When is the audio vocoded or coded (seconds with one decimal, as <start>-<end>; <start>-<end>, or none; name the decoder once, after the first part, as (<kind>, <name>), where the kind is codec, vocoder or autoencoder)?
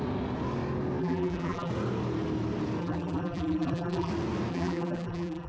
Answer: 1.0-1.7 (vocoder, BigVGAN v2); 2.8-4.1; 4.5-5.5